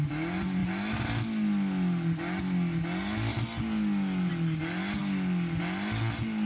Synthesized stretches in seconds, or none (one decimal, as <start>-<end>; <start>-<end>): none